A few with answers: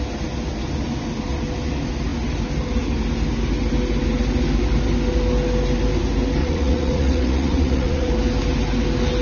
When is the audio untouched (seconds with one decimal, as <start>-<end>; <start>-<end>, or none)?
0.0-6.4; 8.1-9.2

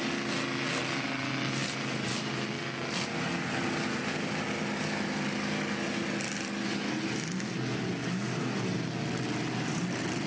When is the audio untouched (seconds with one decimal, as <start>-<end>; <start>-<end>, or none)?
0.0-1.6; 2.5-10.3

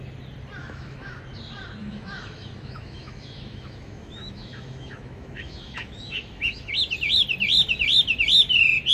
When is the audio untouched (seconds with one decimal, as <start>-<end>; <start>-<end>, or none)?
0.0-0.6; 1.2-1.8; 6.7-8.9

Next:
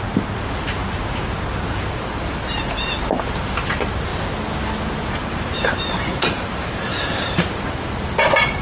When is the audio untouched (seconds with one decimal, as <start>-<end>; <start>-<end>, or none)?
0.8-1.7; 4.1-5.2

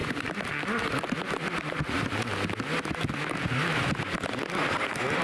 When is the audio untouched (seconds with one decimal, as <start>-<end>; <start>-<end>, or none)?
0.0-5.2

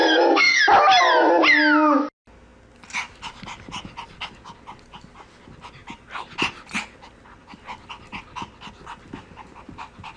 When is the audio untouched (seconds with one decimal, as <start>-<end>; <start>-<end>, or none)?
0.6-10.2